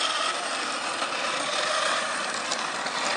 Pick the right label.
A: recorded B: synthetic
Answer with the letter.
A